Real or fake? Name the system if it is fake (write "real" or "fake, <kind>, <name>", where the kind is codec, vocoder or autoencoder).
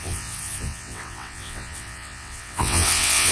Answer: fake, vocoder, WaveNeXt